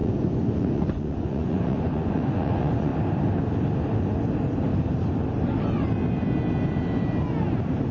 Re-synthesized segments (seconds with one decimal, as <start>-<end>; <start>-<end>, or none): 0.0-2.9